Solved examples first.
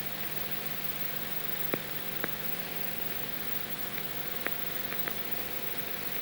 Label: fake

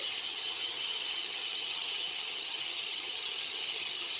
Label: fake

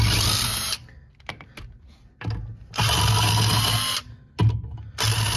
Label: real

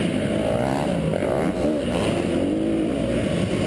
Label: real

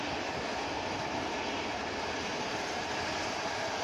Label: real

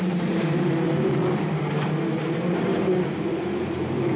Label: fake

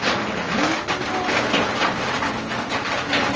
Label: real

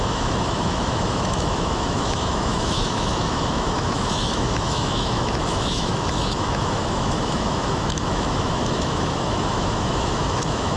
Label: fake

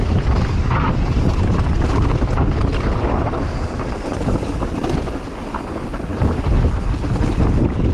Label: real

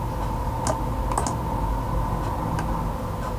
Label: real